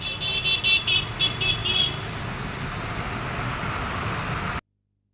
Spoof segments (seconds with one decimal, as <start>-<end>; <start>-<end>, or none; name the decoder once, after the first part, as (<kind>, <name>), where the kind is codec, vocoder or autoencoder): none